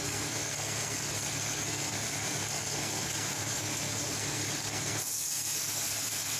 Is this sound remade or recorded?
remade